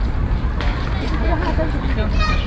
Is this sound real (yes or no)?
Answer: yes